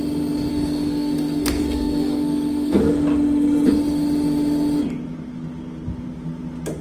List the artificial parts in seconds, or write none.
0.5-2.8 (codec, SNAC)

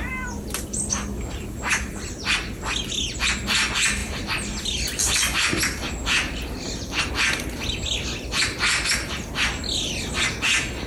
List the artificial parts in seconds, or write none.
none

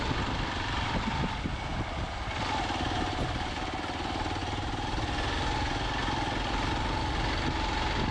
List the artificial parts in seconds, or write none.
none

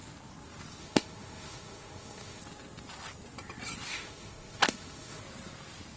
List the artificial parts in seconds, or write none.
0.8-2.4 (autoencoder, DAC-VAE); 3.9-5.2

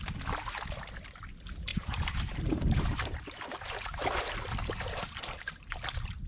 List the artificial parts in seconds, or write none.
1.7-4.2 (vocoder, BigVGAN v2)

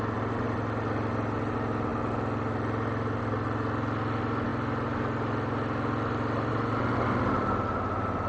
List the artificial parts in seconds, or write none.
none

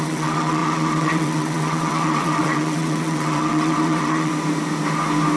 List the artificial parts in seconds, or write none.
0.0-4.3 (vocoder, WaveNeXt)